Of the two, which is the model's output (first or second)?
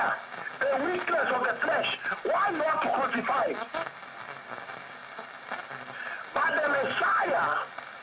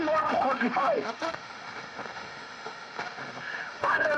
second